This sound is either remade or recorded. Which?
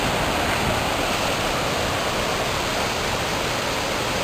recorded